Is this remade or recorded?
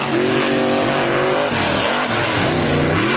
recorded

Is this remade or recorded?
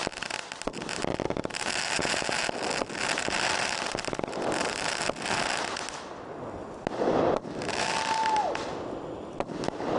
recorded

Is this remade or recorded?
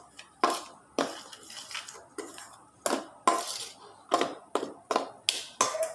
recorded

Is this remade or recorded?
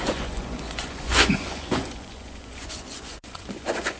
remade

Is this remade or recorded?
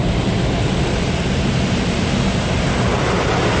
recorded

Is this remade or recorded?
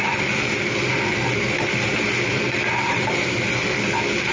recorded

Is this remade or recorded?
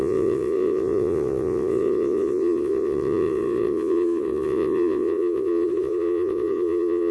remade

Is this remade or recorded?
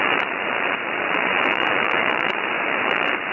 remade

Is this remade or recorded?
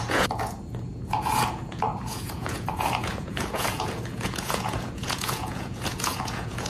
remade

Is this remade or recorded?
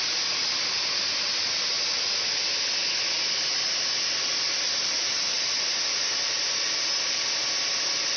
recorded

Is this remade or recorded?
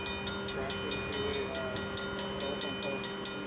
recorded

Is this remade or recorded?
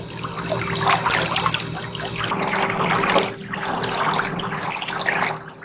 recorded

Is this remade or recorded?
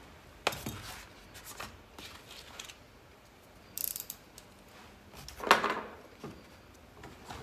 recorded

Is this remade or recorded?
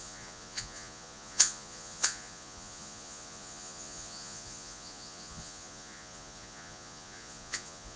remade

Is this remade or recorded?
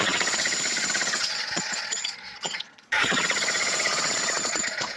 remade